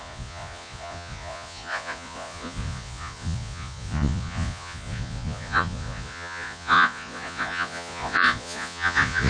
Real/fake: fake